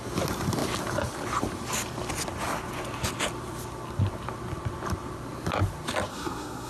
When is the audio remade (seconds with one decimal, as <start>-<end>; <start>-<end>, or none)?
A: 6.1-6.7